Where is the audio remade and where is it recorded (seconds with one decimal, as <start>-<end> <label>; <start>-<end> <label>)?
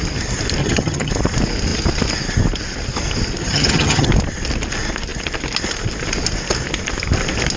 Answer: 0.0-0.6 recorded; 0.6-1.1 remade; 1.1-3.4 recorded; 3.4-4.1 remade; 4.1-7.6 recorded